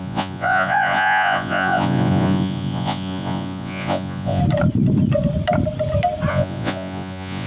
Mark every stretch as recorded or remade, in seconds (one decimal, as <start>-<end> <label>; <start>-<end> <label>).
0.0-4.4 remade; 4.4-6.3 recorded; 6.3-7.5 remade

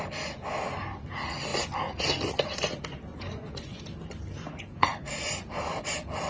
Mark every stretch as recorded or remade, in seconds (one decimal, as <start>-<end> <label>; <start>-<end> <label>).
0.0-3.1 recorded; 3.1-3.8 remade; 3.8-6.3 recorded